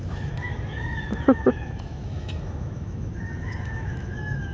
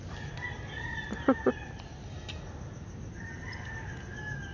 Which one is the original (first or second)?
second